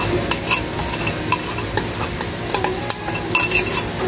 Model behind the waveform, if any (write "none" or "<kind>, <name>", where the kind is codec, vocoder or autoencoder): none